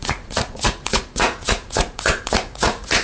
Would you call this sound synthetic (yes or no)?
yes